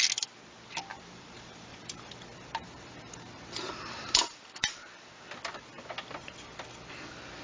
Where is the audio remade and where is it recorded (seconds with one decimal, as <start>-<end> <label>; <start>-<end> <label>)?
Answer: 0.0-0.9 recorded; 0.9-5.3 remade; 5.3-7.4 recorded